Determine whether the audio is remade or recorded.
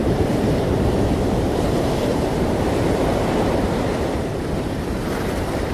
remade